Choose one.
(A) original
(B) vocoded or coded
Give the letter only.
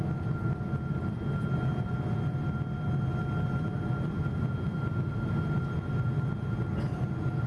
A